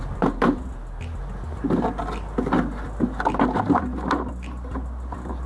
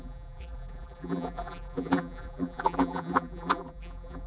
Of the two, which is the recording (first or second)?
first